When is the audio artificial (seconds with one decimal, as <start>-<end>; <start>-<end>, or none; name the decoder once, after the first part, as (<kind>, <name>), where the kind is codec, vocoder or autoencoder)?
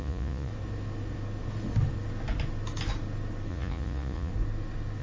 0.0-0.5 (vocoder, Vocos); 3.5-4.3